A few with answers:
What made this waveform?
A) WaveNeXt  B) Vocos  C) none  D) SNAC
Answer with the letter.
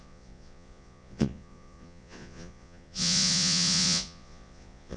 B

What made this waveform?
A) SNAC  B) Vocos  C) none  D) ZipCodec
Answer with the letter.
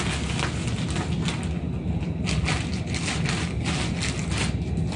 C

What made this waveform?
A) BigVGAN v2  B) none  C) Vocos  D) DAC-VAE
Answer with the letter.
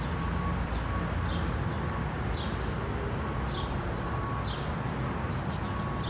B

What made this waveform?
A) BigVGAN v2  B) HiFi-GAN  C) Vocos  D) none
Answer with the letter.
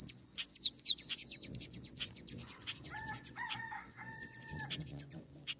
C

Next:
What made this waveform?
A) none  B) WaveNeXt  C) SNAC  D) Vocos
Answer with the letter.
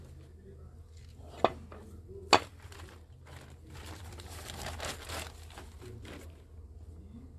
A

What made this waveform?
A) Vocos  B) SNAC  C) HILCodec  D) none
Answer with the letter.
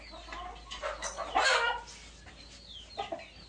D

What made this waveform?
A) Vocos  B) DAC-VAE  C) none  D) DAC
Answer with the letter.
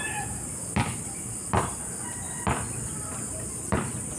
C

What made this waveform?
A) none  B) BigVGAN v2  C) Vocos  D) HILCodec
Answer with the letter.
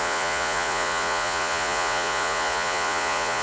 C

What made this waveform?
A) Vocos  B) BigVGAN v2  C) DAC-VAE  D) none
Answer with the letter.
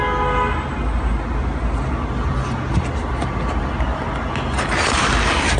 D